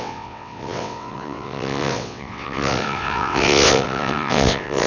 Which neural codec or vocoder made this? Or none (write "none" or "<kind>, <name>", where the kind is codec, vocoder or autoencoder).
vocoder, WaveNeXt